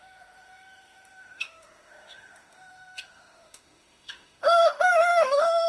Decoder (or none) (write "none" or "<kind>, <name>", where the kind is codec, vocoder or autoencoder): autoencoder, DAC-VAE